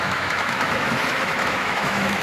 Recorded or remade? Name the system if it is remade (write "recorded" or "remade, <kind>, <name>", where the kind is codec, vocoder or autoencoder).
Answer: remade, autoencoder, DAC-VAE